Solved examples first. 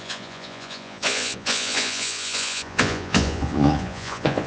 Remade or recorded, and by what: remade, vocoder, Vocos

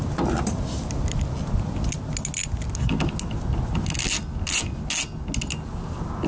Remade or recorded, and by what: recorded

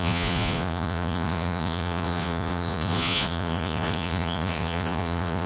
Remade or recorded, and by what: remade, vocoder, Vocos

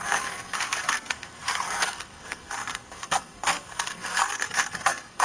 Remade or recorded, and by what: remade, codec, SNAC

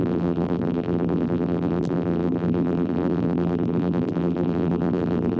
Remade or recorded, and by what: remade, vocoder, BigVGAN v2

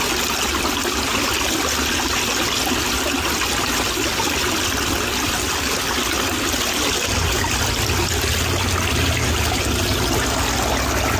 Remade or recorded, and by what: recorded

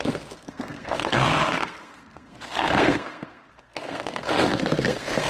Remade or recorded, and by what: remade, codec, SNAC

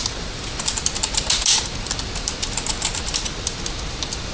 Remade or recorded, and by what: recorded